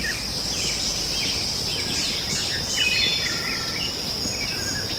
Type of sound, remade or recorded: recorded